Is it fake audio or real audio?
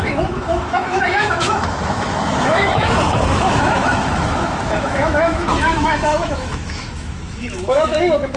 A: fake